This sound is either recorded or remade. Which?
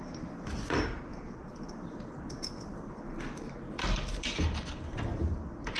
recorded